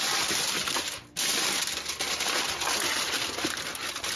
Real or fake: real